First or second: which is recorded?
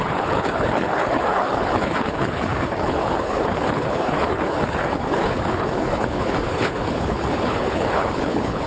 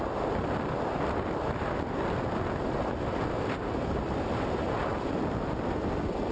second